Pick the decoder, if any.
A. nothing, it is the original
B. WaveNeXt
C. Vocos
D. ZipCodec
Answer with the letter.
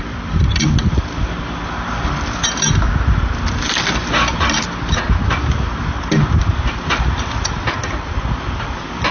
A